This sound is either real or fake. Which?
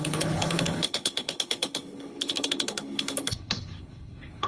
fake